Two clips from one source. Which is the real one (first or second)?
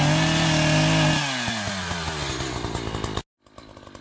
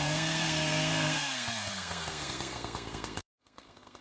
first